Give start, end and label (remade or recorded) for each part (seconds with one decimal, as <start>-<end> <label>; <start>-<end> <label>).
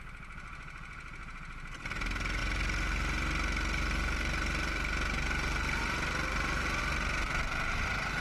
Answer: 0.0-8.2 recorded